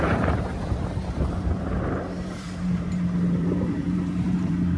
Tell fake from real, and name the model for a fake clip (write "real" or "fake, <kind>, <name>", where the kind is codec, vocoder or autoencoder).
fake, vocoder, BigVGAN v2